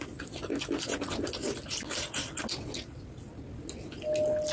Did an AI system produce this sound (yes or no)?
no